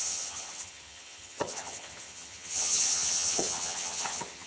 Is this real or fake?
fake